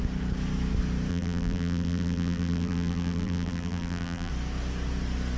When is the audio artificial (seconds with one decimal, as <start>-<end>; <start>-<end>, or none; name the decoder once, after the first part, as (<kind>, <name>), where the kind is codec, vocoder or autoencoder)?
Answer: 1.1-4.3 (vocoder, BigVGAN v2)